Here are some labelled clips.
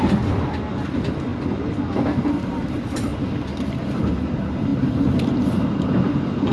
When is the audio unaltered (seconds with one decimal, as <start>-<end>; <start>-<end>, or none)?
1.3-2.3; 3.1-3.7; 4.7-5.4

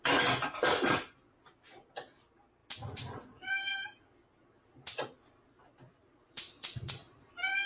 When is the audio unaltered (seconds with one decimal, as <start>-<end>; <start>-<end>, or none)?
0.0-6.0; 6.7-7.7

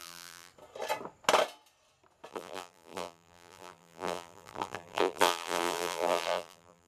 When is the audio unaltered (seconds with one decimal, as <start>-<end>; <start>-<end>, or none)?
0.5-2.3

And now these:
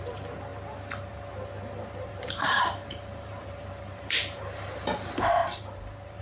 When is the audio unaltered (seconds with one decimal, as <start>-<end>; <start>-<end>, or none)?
0.5-2.1

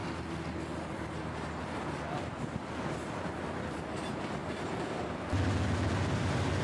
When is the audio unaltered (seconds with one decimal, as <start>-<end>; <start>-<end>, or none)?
0.0-6.6

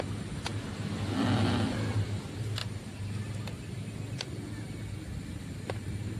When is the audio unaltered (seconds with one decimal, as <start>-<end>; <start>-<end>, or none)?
0.0-2.6; 3.1-6.2